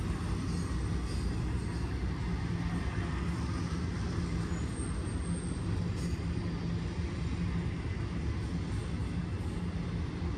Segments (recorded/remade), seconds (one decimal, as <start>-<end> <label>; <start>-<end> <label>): 0.0-10.4 recorded